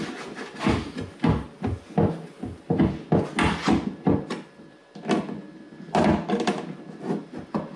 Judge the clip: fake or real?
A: real